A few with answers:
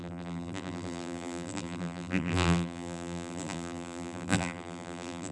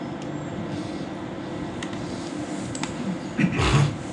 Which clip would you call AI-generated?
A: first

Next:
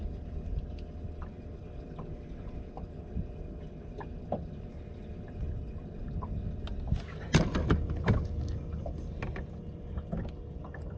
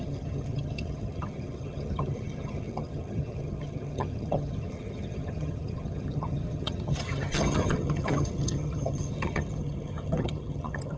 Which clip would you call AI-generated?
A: second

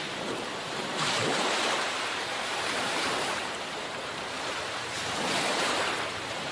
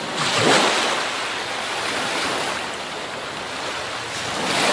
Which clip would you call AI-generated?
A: first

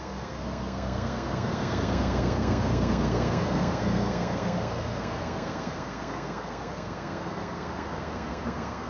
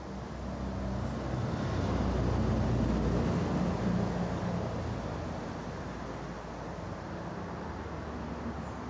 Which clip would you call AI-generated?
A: first